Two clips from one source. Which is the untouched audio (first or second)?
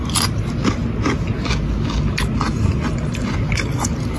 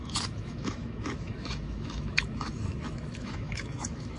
first